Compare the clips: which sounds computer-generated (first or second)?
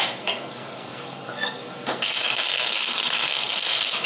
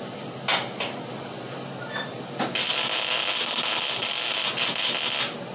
first